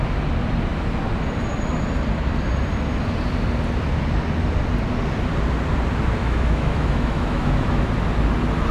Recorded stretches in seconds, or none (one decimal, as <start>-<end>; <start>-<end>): 0.0-6.2; 7.9-8.7